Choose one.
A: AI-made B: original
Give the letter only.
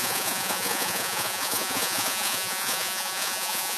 A